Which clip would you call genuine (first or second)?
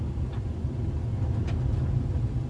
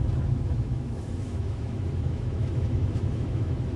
first